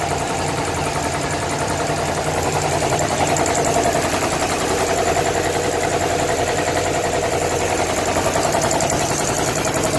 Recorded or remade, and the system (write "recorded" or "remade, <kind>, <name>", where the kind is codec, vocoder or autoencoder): remade, vocoder, BigVGAN v2